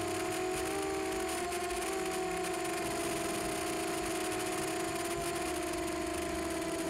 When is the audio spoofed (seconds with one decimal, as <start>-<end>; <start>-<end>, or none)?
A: none